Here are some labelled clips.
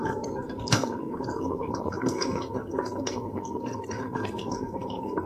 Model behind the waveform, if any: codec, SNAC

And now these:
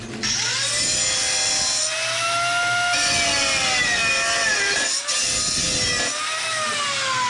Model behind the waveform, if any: none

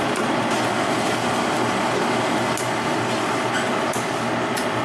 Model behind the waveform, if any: none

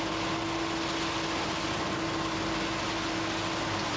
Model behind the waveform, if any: none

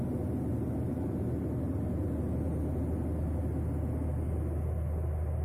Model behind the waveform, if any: none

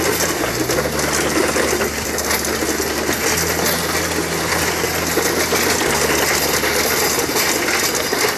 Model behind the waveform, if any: none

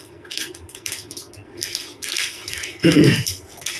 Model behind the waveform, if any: codec, SNAC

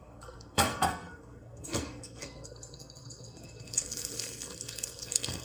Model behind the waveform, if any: codec, SNAC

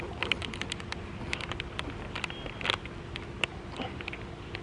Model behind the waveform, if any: none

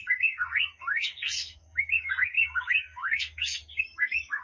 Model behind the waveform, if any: codec, SNAC